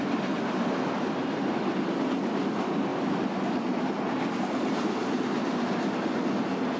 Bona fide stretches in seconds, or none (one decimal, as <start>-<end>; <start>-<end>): 0.0-6.8